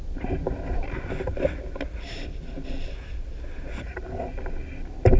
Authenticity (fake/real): real